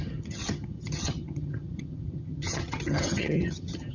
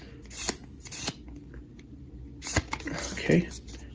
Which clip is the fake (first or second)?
first